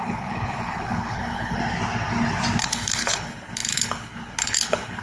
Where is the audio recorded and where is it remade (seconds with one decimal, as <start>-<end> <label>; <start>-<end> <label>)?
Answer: 0.0-1.6 remade; 1.6-2.6 recorded; 2.6-5.0 remade